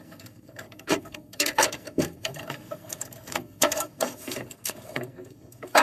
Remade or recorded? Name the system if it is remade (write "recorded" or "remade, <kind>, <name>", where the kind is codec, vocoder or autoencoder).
remade, codec, SNAC